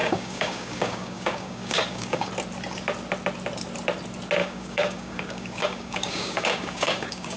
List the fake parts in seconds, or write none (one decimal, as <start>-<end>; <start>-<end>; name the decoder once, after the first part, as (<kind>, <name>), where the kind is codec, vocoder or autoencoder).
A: 0.0-2.3 (codec, DAC); 4.4-7.4